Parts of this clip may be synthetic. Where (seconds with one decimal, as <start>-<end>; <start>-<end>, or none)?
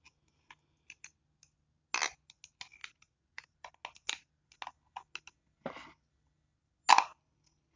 2.8-3.7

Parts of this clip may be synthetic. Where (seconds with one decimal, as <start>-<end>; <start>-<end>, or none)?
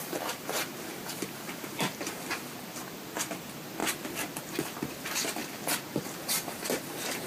0.0-7.3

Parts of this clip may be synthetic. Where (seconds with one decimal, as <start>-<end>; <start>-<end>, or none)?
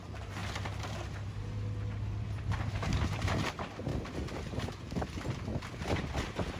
0.0-0.4; 3.1-3.9; 4.6-5.5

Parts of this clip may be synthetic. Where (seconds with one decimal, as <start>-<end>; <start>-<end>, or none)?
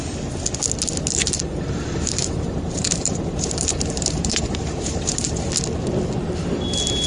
1.2-5.3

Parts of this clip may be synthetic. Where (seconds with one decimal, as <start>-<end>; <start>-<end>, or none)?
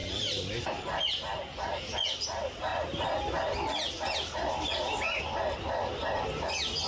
0.0-0.7